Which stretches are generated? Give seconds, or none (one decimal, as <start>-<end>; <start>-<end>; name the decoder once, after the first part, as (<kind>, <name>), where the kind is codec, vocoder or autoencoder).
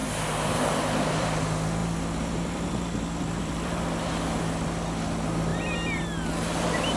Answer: 0.0-1.4 (vocoder, BigVGAN v2); 1.8-4.4